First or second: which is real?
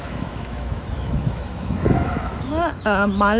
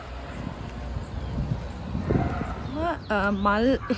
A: second